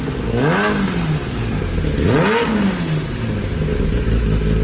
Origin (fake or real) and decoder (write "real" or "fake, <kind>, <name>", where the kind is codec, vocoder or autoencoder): real